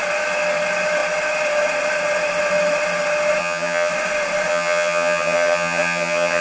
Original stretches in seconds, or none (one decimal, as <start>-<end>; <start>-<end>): 0.0-3.4; 3.9-4.5